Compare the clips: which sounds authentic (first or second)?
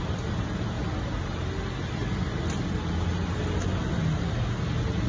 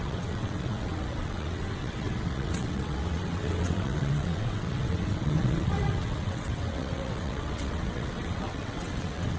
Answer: first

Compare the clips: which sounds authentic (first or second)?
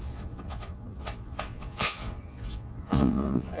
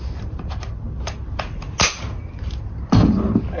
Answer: second